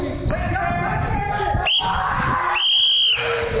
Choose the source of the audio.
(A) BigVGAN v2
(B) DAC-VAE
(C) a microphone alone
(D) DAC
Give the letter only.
C